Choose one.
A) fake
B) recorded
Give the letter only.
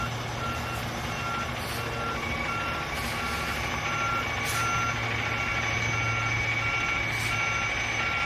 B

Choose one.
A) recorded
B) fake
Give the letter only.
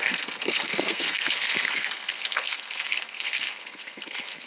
B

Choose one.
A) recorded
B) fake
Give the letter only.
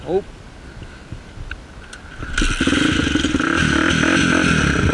A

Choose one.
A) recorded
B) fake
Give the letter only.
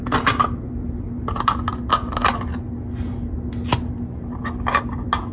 A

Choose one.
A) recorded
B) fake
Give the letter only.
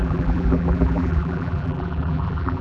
B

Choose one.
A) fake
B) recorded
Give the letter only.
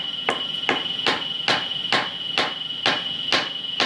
B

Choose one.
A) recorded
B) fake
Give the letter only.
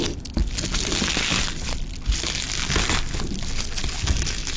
A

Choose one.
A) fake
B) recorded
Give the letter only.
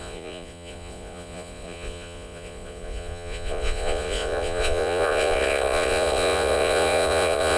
A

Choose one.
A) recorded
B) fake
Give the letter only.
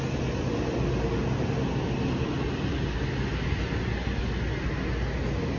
A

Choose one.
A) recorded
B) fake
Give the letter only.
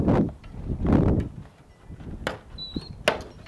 A